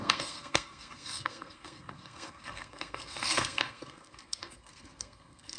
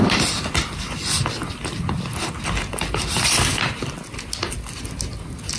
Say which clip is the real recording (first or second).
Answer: second